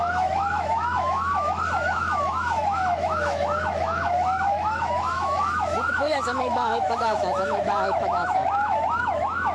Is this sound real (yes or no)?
no